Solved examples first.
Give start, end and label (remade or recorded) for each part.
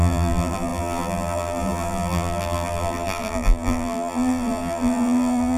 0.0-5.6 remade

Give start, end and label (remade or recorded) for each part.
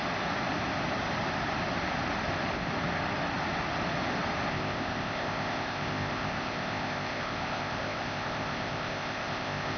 0.0-4.5 recorded; 4.5-9.8 remade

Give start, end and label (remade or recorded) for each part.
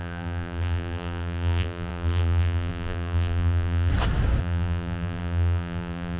0.0-3.9 remade; 3.9-4.4 recorded; 4.4-6.2 remade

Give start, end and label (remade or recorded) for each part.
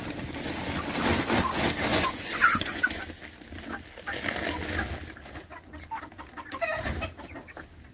0.0-1.9 recorded; 1.9-3.0 remade; 3.0-7.9 recorded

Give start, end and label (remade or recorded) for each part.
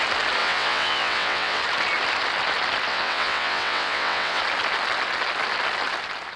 0.0-0.4 recorded; 0.4-1.6 remade; 1.6-2.9 recorded; 2.9-4.4 remade; 4.4-6.4 recorded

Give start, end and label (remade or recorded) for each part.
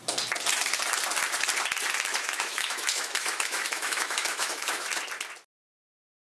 0.0-2.1 recorded; 2.1-4.9 remade; 4.9-6.2 recorded